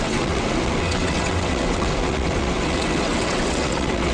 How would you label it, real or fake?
fake